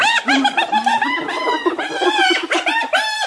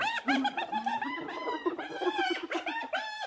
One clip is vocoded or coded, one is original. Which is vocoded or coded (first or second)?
second